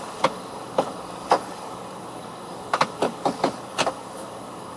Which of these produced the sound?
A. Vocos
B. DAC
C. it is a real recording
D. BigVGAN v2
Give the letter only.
B